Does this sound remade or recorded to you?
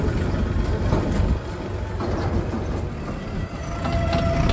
recorded